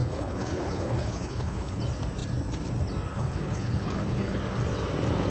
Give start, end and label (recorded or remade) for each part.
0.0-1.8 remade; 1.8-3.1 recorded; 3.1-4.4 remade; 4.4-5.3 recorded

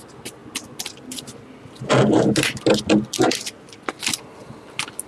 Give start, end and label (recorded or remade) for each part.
0.0-5.1 recorded

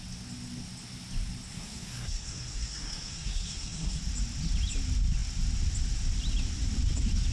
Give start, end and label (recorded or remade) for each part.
0.0-1.5 recorded; 1.5-4.0 remade; 4.0-7.3 recorded

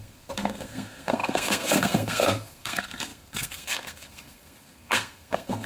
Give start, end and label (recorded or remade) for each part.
0.0-5.7 remade

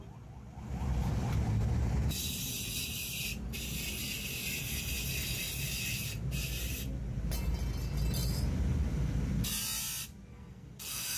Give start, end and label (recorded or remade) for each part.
0.0-10.3 recorded; 10.3-11.2 remade

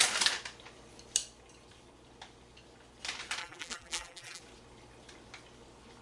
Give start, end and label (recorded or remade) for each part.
0.0-3.4 recorded; 3.4-4.4 remade; 4.4-6.0 recorded

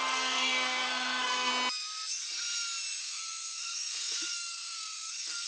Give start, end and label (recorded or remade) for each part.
0.0-1.5 remade; 1.5-3.0 recorded; 3.0-5.5 remade